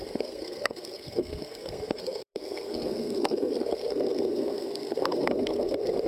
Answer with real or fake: fake